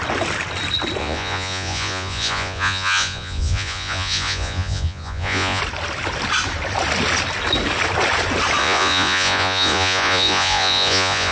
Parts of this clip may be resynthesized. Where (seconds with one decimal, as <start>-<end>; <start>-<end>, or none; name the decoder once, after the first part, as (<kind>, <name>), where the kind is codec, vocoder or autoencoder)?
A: 1.0-5.6 (vocoder, Vocos); 8.6-11.3

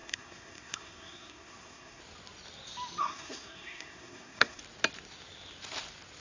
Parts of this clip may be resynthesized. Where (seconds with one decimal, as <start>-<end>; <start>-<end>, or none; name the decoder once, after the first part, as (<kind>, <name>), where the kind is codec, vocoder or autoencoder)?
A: 0.0-2.0 (codec, SNAC); 3.0-4.6

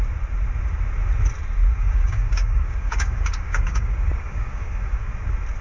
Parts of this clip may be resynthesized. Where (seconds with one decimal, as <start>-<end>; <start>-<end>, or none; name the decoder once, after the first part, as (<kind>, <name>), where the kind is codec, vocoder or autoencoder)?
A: 1.7-5.1 (codec, DAC)

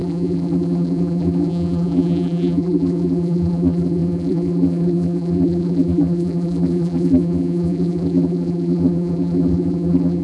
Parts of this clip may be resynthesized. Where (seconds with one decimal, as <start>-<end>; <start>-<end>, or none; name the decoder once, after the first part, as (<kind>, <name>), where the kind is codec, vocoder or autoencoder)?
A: 0.0-10.2 (vocoder, BigVGAN v2)

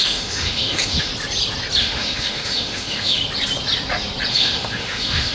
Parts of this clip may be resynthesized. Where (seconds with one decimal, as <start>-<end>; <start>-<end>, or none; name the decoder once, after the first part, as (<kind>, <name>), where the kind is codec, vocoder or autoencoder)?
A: 0.0-1.1 (autoencoder, DAC-VAE); 1.8-3.2; 4.3-5.3